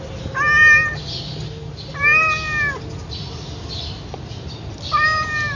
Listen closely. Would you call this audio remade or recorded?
recorded